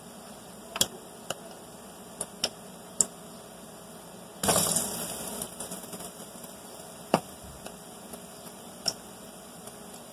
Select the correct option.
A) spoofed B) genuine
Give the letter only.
B